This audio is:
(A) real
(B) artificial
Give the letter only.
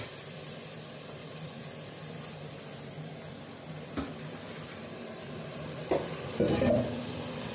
B